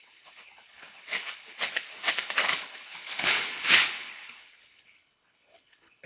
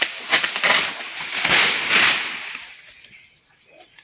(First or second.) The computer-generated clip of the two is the first